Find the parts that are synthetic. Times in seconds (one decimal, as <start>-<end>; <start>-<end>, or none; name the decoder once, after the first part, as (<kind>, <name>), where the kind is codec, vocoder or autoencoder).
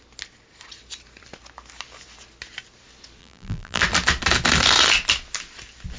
3.2-3.8 (vocoder, BigVGAN v2)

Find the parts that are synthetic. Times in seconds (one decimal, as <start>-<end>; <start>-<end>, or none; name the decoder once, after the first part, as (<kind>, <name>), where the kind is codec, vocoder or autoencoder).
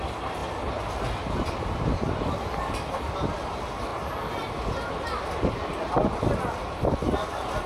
0.0-0.4 (vocoder, BigVGAN v2); 1.9-3.9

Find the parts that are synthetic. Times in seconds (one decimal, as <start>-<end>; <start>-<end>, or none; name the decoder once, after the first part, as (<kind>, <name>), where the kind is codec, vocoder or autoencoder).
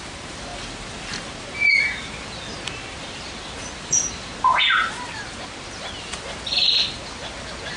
0.5-4.9 (vocoder, BigVGAN v2)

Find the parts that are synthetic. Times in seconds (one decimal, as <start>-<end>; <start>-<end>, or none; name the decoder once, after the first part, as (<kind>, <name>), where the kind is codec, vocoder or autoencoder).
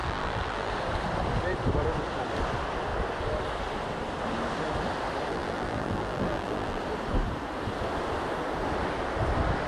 0.0-0.7 (vocoder, BigVGAN v2); 5.3-6.8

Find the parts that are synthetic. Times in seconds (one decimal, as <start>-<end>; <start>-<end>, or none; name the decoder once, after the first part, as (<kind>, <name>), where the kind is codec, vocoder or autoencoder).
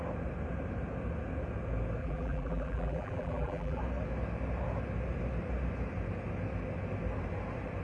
2.0-3.8 (vocoder, BigVGAN v2)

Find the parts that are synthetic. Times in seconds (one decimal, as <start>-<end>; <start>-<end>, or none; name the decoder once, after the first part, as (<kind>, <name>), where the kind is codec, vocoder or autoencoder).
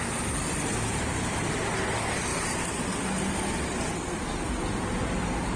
none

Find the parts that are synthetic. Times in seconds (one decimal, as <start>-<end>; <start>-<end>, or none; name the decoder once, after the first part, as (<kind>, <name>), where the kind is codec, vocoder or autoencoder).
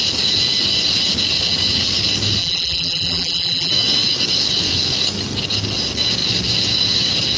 2.4-3.7 (vocoder, BigVGAN v2)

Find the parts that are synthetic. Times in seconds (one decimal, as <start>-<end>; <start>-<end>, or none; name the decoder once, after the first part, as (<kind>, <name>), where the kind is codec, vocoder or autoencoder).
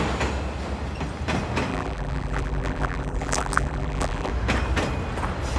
1.7-4.3 (vocoder, BigVGAN v2)